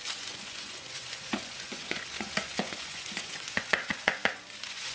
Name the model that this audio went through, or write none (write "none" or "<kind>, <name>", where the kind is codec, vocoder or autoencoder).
vocoder, Vocos